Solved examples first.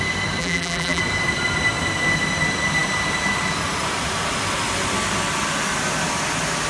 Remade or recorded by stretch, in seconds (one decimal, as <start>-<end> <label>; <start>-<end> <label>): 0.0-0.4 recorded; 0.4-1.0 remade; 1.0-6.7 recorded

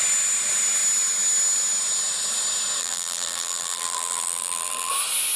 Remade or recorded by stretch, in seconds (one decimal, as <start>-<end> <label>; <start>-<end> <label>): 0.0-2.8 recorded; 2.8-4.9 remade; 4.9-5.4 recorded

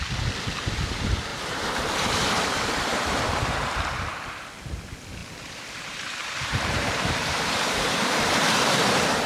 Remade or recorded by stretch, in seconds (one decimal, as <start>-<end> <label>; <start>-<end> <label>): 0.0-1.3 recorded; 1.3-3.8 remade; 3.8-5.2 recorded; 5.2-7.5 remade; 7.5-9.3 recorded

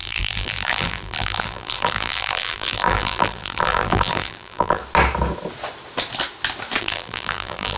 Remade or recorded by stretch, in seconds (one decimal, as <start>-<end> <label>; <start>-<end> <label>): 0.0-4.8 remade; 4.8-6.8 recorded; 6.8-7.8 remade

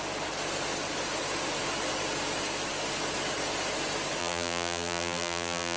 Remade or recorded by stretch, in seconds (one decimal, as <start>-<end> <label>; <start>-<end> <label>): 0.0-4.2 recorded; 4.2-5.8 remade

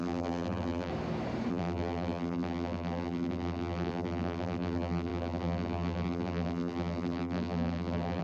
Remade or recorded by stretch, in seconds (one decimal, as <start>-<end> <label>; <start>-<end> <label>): 0.0-0.9 remade; 0.9-1.5 recorded; 1.5-8.2 remade

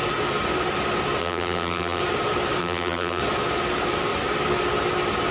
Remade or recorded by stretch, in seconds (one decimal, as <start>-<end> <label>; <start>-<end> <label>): 0.0-1.2 recorded; 1.2-2.0 remade; 2.0-2.6 recorded; 2.6-3.2 remade; 3.2-5.3 recorded